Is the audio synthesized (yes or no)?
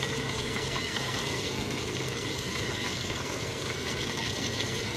yes